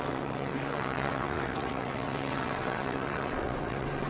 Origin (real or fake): fake